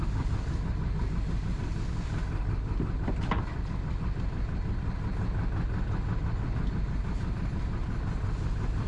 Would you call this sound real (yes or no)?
yes